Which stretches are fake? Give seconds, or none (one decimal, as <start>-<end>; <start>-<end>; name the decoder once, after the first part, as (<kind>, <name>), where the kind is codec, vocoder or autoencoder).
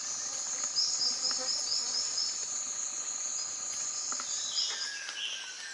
1.7-4.1 (vocoder, Vocos)